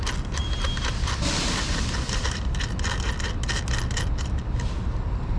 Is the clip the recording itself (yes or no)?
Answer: yes